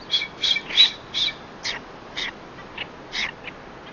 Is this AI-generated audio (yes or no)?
no